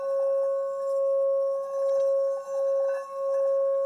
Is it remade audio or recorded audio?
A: recorded